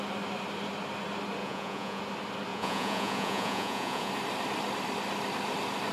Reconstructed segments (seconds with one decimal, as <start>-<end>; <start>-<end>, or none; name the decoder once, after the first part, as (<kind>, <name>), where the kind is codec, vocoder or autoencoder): 1.4-2.0 (vocoder, Vocos); 2.5-4.1